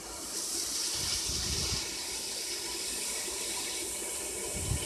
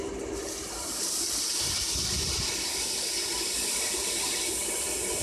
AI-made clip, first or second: second